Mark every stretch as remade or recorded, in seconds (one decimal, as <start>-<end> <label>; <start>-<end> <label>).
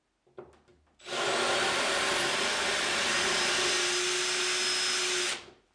0.0-5.7 recorded